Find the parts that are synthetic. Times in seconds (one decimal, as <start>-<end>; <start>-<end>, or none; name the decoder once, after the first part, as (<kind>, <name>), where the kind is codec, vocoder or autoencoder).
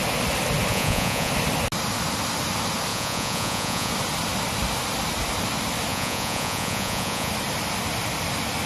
0.7-1.3 (vocoder, Vocos); 2.9-3.9; 5.9-7.3